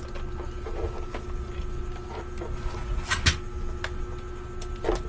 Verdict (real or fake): real